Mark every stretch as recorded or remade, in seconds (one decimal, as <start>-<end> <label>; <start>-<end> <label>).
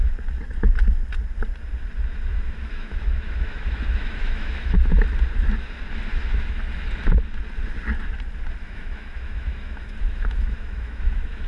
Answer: 0.0-2.3 recorded; 2.3-5.0 remade; 5.0-6.1 recorded; 6.1-6.6 remade; 6.6-8.6 recorded; 8.6-11.5 remade